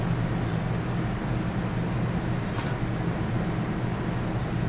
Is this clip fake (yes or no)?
no